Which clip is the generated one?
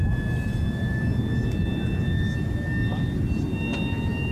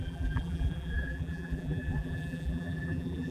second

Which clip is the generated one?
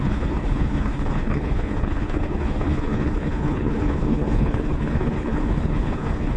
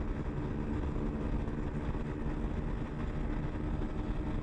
first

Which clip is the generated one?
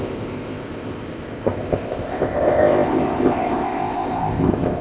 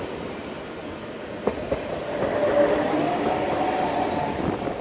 first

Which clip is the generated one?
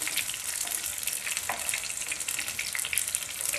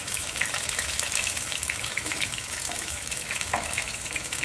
second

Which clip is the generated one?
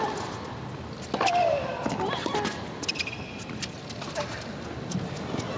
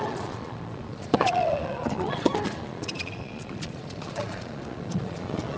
second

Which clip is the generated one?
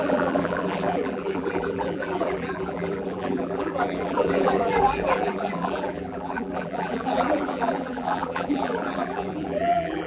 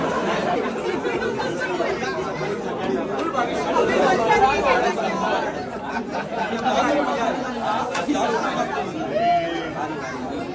first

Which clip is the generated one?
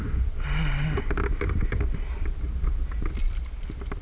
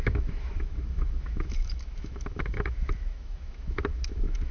second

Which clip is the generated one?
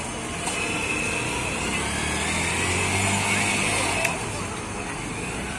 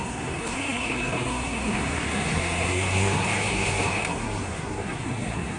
second